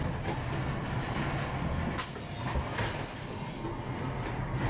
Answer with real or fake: real